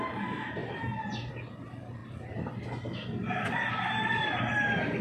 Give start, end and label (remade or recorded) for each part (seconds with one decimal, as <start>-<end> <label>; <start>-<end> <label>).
0.0-5.0 recorded